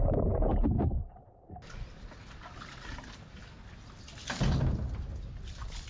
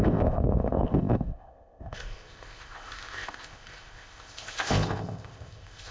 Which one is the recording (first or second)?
first